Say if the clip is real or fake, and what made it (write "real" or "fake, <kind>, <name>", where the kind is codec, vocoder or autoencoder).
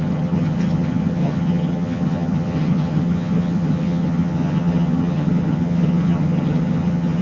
fake, vocoder, HiFi-GAN